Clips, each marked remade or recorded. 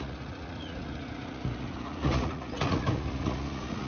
remade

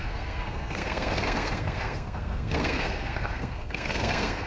remade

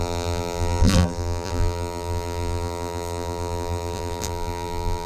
remade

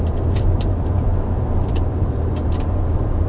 remade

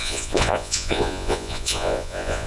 remade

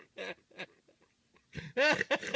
recorded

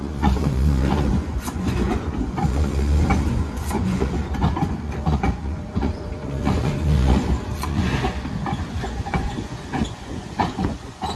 remade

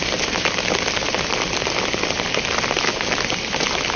recorded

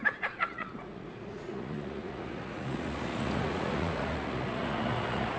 remade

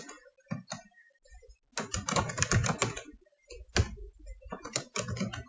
recorded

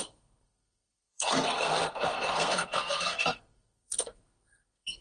remade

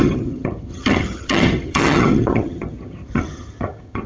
remade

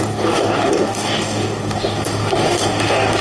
remade